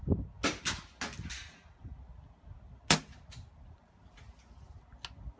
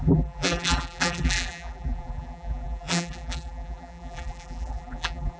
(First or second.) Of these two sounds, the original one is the first